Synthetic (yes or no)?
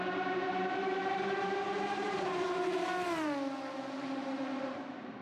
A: yes